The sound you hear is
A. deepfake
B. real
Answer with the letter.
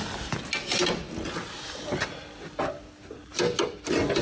B